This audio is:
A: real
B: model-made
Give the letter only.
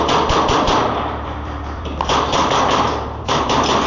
B